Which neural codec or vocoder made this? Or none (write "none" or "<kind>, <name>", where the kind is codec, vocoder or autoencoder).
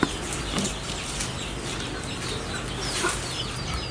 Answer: none